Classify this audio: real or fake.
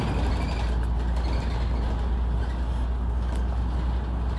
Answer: real